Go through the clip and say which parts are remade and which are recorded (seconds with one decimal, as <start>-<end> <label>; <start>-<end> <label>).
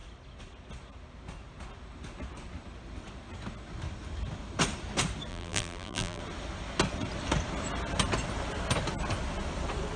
0.0-5.3 recorded; 5.3-6.2 remade; 6.2-10.0 recorded